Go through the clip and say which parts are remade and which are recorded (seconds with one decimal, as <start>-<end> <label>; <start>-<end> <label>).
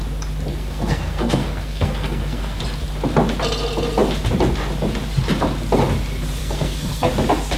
0.0-0.5 recorded; 0.5-2.6 remade; 2.6-6.4 recorded; 6.4-7.1 remade; 7.1-7.6 recorded